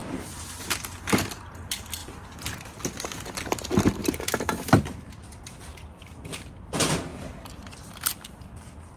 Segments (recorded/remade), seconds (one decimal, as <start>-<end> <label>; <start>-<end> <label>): 0.0-2.0 recorded; 2.0-2.8 remade; 2.8-4.0 recorded; 4.0-5.1 remade; 5.1-9.0 recorded

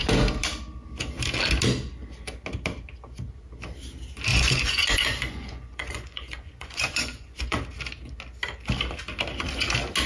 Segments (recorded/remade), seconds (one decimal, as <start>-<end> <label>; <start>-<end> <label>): 0.0-4.3 recorded; 4.3-7.6 remade; 7.6-10.1 recorded

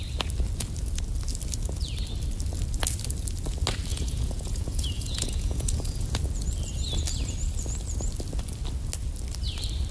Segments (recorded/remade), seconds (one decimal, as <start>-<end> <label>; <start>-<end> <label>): 0.0-3.9 recorded; 3.9-6.2 remade; 6.2-9.9 recorded

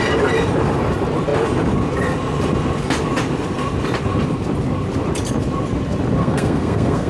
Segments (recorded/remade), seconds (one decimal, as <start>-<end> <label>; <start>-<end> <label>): 0.0-6.2 recorded; 6.2-7.1 remade

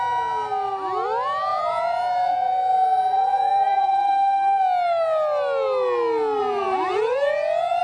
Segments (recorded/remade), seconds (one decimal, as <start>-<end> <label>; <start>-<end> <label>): 0.0-1.5 recorded; 1.5-4.1 remade; 4.1-6.4 recorded; 6.4-7.8 remade

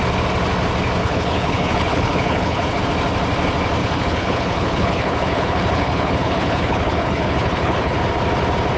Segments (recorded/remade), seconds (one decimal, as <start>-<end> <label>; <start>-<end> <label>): 0.0-1.0 recorded; 1.0-2.8 remade; 2.8-3.8 recorded; 3.8-8.0 remade; 8.0-8.8 recorded